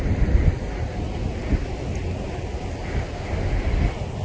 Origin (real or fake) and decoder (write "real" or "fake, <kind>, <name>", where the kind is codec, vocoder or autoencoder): real